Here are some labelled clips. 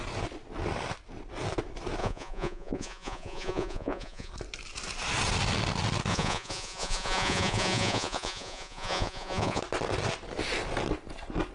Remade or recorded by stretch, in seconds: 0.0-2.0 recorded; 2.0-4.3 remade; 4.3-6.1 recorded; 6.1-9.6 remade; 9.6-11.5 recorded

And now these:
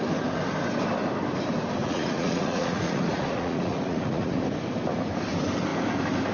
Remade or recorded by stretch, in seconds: 0.0-1.8 recorded; 1.8-4.4 remade; 4.4-6.3 recorded

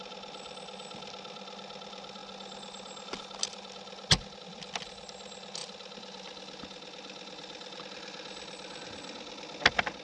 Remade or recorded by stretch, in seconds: 0.0-10.0 recorded

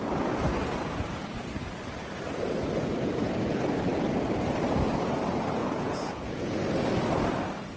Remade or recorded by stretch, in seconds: 0.0-5.6 recorded; 5.6-6.6 remade; 6.6-7.8 recorded

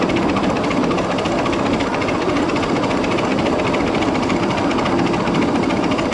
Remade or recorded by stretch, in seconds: 0.0-1.9 recorded; 1.9-2.5 remade; 2.5-6.1 recorded

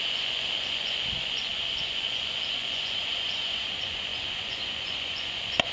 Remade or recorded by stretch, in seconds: 0.0-5.7 remade

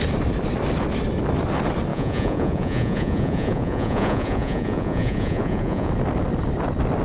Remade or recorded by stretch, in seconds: 0.0-1.9 recorded; 1.9-5.9 remade; 5.9-7.0 recorded